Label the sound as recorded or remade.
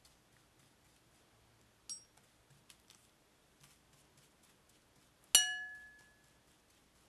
recorded